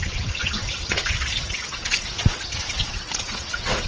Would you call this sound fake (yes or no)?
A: yes